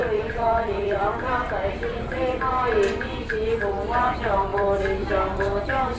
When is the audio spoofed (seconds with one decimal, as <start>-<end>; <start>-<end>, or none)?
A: 0.0-2.5; 4.5-5.1